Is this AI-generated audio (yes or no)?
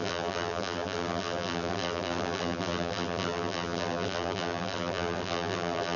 yes